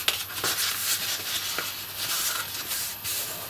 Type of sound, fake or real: real